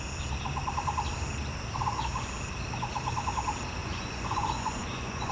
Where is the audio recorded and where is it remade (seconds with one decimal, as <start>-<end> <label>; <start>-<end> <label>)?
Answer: 0.0-3.8 recorded; 3.8-5.3 remade